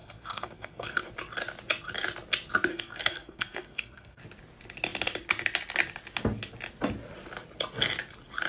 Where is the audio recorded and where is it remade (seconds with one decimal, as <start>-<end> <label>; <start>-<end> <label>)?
0.0-1.1 remade; 1.1-2.7 recorded; 2.7-4.2 remade; 4.2-8.5 recorded